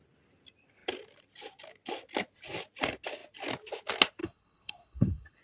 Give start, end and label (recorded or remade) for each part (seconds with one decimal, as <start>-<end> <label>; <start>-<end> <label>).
0.0-4.2 recorded; 4.2-5.4 remade